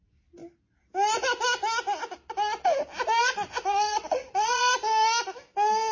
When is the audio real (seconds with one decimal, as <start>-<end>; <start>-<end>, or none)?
0.0-3.2; 4.7-5.9

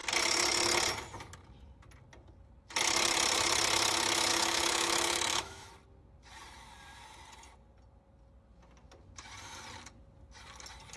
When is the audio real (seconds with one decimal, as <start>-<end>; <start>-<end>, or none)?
0.0-4.3; 5.7-11.0

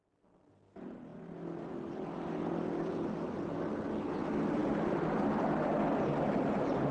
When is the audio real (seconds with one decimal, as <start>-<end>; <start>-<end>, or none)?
0.0-6.9